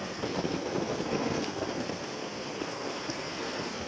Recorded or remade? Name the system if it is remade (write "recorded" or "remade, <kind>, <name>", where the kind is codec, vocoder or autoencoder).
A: remade, codec, SNAC